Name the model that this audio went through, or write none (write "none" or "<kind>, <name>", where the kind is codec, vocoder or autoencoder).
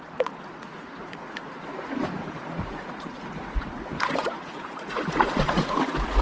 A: vocoder, Vocos